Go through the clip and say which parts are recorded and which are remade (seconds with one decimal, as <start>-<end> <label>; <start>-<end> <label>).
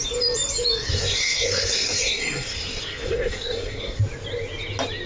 0.0-0.9 recorded; 0.9-4.0 remade; 4.0-5.1 recorded